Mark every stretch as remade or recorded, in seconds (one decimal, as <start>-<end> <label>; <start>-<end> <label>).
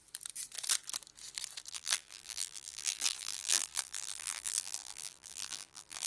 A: 0.0-1.7 recorded; 1.7-6.1 remade